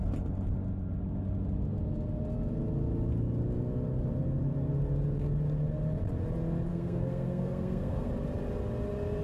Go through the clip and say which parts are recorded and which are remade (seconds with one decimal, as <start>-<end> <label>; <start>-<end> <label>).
0.0-6.7 recorded; 6.7-8.1 remade; 8.1-9.2 recorded